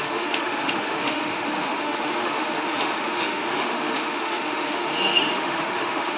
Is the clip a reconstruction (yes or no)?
yes